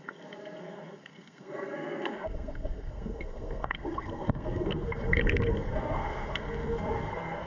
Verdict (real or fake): fake